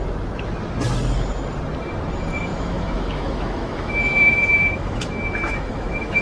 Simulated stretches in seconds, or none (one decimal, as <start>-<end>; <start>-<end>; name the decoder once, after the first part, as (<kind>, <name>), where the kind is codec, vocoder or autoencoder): 2.5-6.2 (autoencoder, DAC-VAE)